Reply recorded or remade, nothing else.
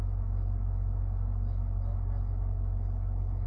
recorded